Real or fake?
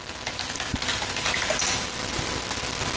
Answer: real